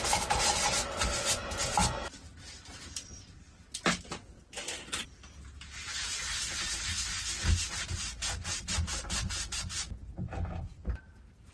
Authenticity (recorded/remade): recorded